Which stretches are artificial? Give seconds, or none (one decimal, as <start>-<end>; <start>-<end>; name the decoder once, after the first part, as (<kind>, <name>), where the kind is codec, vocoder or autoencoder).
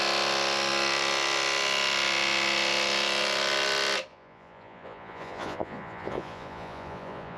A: 4.1-7.4 (vocoder, Vocos)